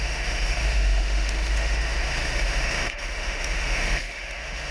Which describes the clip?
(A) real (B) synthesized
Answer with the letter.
B